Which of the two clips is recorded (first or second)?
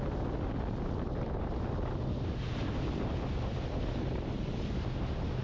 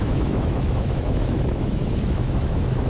first